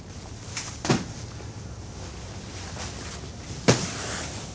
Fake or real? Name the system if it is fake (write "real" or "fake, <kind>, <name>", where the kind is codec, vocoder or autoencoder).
real